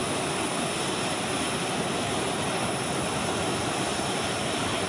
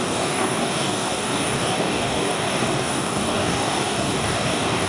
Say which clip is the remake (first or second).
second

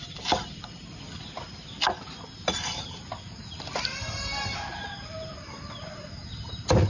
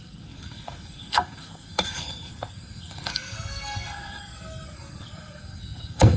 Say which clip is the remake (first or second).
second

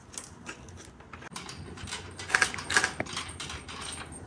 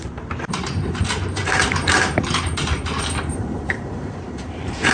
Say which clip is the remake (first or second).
second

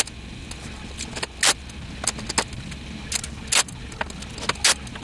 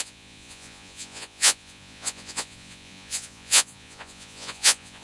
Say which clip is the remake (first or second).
second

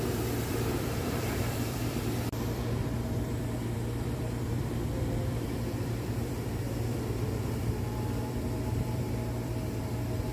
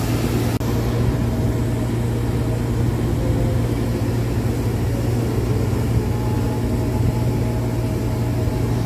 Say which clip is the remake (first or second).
first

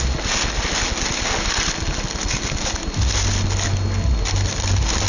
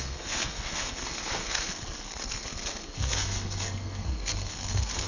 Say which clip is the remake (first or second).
second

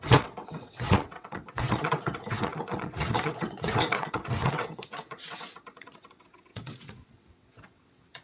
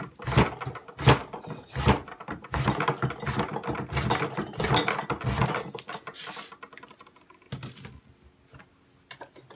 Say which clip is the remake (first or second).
first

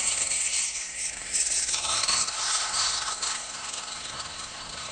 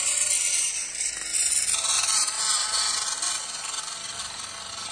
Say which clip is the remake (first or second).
first